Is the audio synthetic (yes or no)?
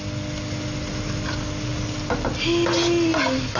no